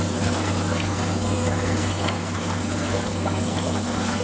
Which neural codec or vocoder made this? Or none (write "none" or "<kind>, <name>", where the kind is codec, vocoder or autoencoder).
codec, SNAC